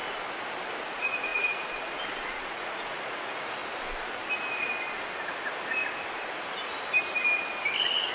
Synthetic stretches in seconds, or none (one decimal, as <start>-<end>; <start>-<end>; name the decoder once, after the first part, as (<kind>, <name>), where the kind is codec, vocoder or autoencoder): 0.8-3.6 (vocoder, Vocos)